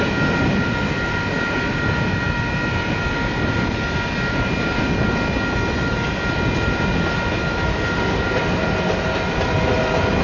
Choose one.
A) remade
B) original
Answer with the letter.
B